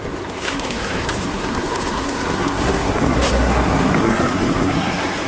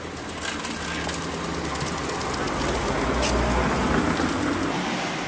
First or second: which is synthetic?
first